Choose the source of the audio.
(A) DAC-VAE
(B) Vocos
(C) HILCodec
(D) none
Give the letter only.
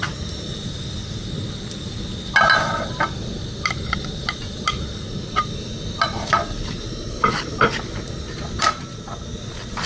D